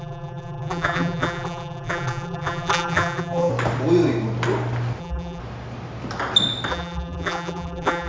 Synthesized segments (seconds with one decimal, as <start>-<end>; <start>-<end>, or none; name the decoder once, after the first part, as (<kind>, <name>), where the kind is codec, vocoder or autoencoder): 0.0-3.5 (vocoder, BigVGAN v2); 5.0-5.4; 6.7-8.1